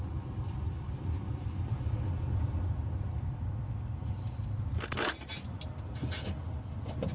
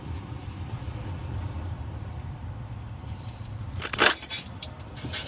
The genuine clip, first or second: first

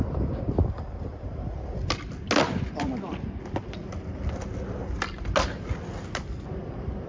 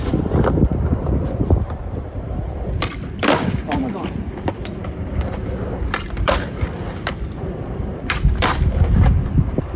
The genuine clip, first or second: first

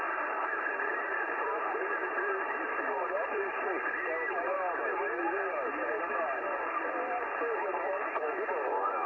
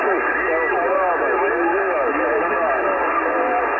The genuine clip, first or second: second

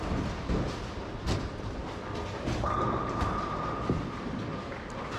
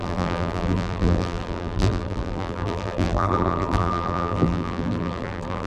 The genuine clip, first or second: first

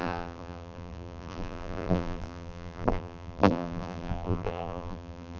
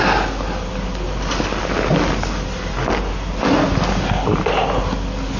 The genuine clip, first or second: second